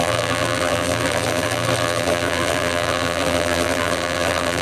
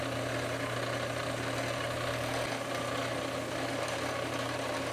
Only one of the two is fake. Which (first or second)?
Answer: first